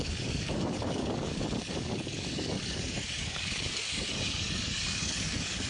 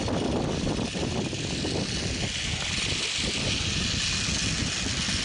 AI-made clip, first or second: first